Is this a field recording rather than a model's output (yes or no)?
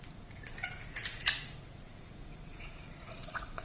no